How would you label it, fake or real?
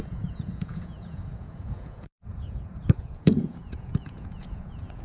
fake